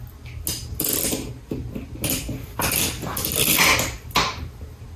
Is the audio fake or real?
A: real